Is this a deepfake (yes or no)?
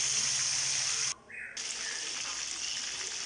no